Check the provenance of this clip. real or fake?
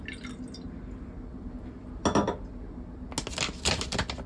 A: real